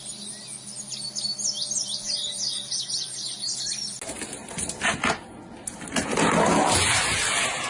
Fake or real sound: real